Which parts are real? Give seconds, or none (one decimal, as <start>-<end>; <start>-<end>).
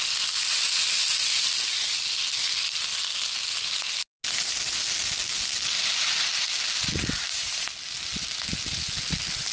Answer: 0.0-9.5